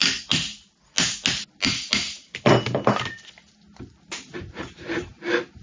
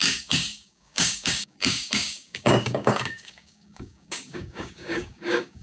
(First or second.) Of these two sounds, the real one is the first